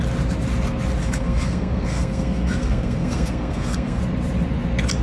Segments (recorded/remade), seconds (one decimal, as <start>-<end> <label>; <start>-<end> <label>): 0.0-1.0 recorded; 1.0-4.0 remade; 4.0-5.0 recorded

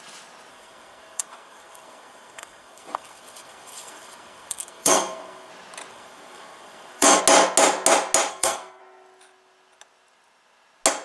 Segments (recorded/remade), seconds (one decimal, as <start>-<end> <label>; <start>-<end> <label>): 0.0-0.5 recorded; 0.5-5.5 remade; 5.5-5.9 recorded; 5.9-7.2 remade; 7.2-8.3 recorded; 8.3-8.8 remade; 8.8-11.0 recorded

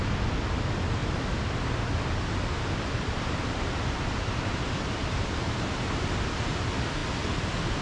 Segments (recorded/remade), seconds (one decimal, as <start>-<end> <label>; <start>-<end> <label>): 0.0-7.8 recorded

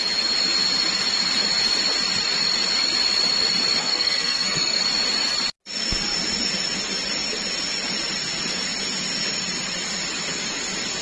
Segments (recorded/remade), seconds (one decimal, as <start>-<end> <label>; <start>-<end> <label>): 0.0-3.8 recorded; 3.8-4.8 remade; 4.8-11.0 recorded

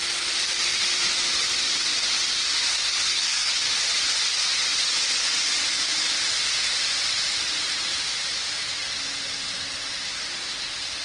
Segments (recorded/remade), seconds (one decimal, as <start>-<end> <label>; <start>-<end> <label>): 0.0-2.7 recorded; 2.7-3.5 remade; 3.5-11.0 recorded

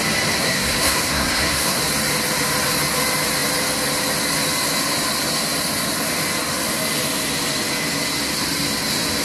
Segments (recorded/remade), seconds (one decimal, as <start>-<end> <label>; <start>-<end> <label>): 0.0-0.4 recorded; 0.4-1.8 remade; 1.8-9.2 recorded

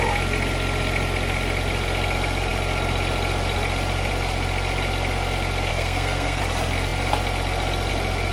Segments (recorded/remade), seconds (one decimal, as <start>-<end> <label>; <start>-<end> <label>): 0.0-5.7 recorded; 5.7-6.4 remade; 6.4-8.3 recorded